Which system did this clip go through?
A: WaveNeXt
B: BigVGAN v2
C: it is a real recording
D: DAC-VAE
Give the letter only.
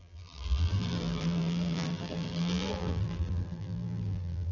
B